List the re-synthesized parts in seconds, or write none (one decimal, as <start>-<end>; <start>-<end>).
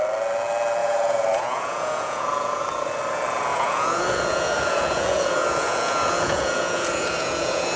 0.8-2.6; 3.5-7.8